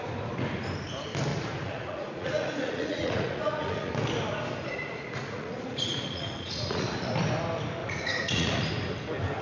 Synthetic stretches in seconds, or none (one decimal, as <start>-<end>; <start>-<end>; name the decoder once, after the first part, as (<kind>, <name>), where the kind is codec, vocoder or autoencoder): 1.3-3.9 (vocoder, Vocos); 4.7-7.1; 7.8-8.7